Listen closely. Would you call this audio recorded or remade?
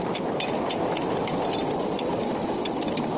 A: recorded